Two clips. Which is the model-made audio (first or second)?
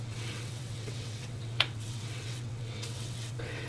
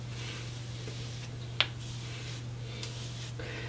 first